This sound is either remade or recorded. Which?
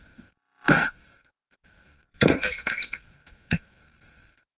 remade